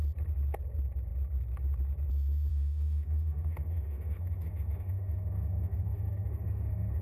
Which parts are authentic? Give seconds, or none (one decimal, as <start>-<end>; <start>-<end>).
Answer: 0.0-2.5